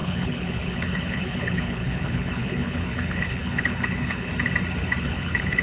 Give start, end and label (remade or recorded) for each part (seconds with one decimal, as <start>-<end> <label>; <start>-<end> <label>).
0.0-4.3 remade; 4.3-5.0 recorded; 5.0-5.6 remade

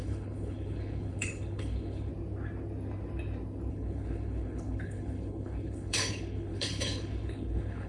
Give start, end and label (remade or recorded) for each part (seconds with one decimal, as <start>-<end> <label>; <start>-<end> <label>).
0.0-2.1 remade; 2.1-3.7 recorded; 3.7-7.9 remade

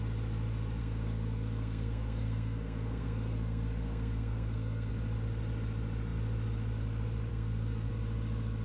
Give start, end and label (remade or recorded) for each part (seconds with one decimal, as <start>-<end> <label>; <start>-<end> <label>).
0.0-0.8 recorded; 0.8-4.9 remade; 4.9-7.3 recorded; 7.3-7.9 remade; 7.9-8.6 recorded

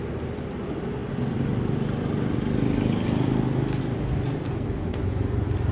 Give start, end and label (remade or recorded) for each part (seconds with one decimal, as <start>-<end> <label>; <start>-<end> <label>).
0.0-4.5 recorded; 4.5-5.0 remade; 5.0-5.7 recorded

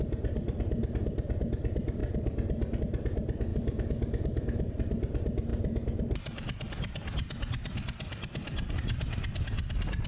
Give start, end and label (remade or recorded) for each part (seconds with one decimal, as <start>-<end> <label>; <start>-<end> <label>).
0.0-3.5 recorded; 3.5-4.7 remade; 4.7-10.1 recorded

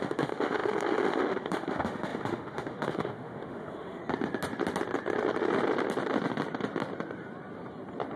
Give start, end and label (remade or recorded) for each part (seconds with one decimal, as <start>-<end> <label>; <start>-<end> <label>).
0.0-4.0 remade; 4.0-8.2 recorded

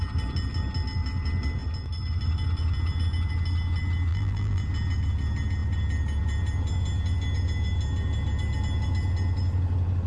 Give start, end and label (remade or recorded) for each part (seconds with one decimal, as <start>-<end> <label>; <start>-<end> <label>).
0.0-4.1 recorded; 4.1-4.6 remade; 4.6-10.1 recorded